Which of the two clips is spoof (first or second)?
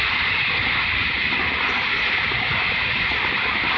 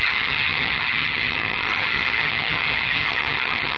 second